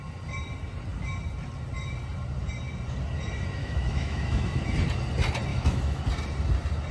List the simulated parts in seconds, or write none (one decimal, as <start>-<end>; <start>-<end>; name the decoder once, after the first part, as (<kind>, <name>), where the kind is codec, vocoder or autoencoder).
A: 3.6-4.6 (autoencoder, DAC-VAE); 5.5-6.0